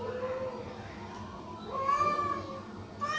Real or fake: real